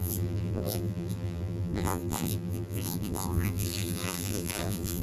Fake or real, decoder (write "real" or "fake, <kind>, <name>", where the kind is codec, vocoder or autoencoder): fake, vocoder, BigVGAN v2